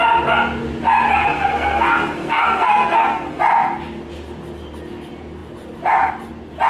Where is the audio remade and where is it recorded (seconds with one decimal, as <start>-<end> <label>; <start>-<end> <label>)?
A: 0.0-1.2 recorded; 1.2-3.4 remade; 3.4-6.7 recorded